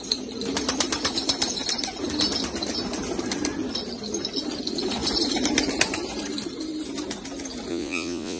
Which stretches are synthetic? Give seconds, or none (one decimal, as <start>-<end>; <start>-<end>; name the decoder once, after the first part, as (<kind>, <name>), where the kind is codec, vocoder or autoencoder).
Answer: 7.7-8.4 (vocoder, Vocos)